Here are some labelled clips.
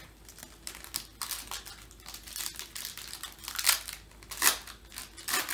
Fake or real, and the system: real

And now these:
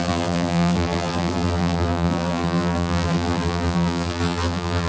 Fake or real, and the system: fake, vocoder, BigVGAN v2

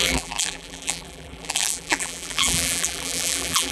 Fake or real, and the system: fake, vocoder, BigVGAN v2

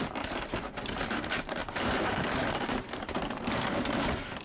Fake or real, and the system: fake, vocoder, BigVGAN v2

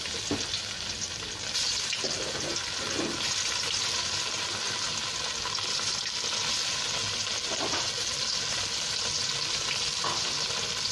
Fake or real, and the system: real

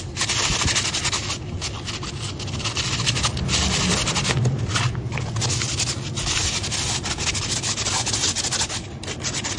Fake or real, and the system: real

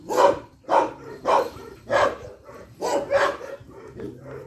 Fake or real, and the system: fake, vocoder, BigVGAN v2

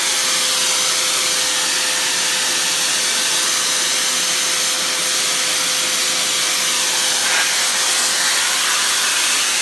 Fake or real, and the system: real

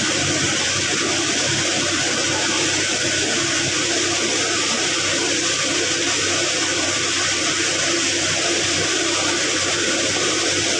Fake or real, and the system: fake, vocoder, BigVGAN v2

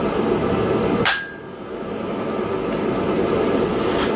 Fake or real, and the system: fake, vocoder, BigVGAN v2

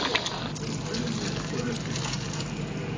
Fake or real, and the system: real